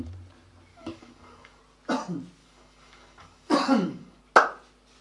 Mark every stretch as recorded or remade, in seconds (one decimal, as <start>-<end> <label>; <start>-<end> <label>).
0.0-0.7 recorded; 0.7-1.6 remade; 1.6-2.4 recorded; 2.4-4.2 remade; 4.2-5.0 recorded